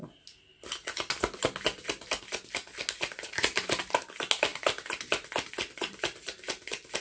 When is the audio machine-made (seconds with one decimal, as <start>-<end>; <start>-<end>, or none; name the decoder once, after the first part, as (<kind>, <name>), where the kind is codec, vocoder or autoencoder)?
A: 4.5-7.0 (vocoder, BigVGAN v2)